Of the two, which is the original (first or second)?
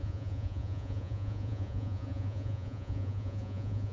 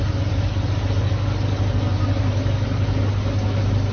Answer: second